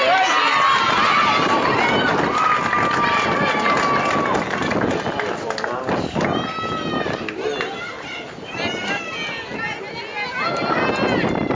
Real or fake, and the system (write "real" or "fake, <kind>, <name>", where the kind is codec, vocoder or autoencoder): real